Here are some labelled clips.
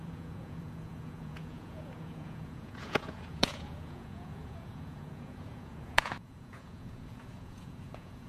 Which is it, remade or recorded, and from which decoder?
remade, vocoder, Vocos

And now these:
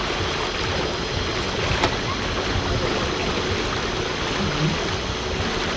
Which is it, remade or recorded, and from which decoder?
recorded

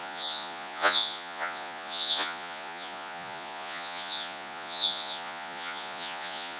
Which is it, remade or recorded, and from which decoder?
remade, vocoder, Vocos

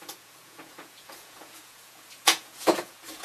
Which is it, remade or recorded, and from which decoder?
remade, vocoder, Vocos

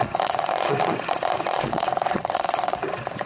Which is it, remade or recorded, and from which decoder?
remade, vocoder, Vocos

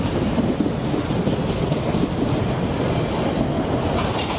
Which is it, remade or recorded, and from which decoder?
recorded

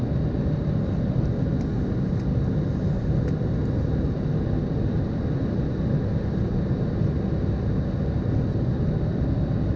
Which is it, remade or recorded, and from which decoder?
recorded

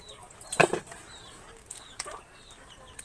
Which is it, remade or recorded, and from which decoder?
recorded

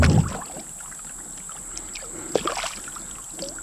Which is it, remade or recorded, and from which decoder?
recorded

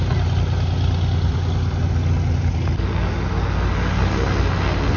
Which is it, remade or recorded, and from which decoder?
recorded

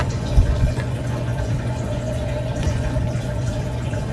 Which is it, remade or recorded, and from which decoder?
remade, vocoder, Vocos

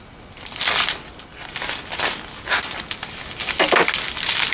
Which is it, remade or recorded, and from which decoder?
recorded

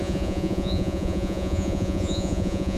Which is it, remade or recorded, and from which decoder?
remade, vocoder, Vocos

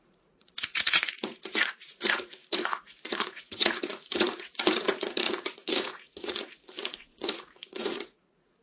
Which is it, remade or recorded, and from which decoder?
remade, vocoder, Vocos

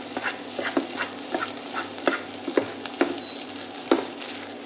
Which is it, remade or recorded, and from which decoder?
recorded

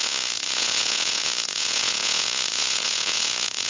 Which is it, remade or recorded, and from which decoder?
remade, vocoder, Vocos